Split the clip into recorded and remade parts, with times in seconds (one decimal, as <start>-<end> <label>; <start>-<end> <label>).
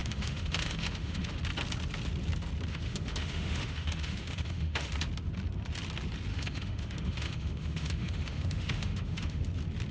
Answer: 0.0-1.4 remade; 1.4-2.7 recorded; 2.7-4.9 remade; 4.9-6.3 recorded; 6.3-9.4 remade; 9.4-9.9 recorded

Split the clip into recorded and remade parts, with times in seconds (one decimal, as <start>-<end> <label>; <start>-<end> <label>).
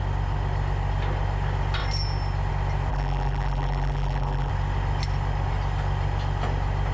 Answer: 0.0-2.9 recorded; 2.9-4.5 remade; 4.5-6.9 recorded